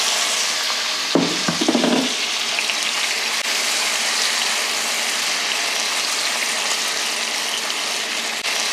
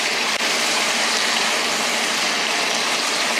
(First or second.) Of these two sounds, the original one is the first